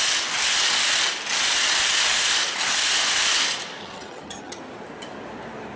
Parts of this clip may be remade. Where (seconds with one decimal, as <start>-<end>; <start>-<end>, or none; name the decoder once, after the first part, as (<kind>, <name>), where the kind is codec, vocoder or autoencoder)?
3.8-4.6 (vocoder, HiFi-GAN)